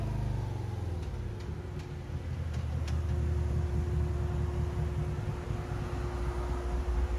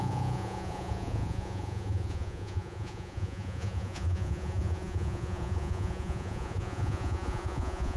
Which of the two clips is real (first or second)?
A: first